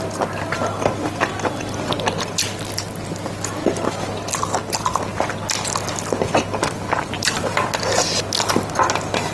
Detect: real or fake real